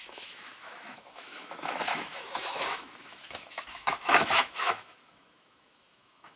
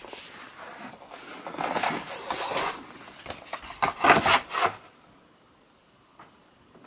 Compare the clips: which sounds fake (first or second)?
first